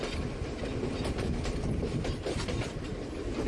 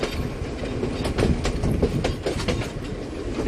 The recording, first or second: second